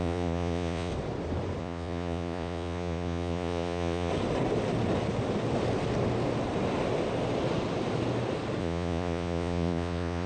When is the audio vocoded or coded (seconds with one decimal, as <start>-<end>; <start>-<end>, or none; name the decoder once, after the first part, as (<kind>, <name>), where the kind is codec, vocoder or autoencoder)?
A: 0.0-0.9 (vocoder, Vocos); 1.6-4.1; 8.6-10.3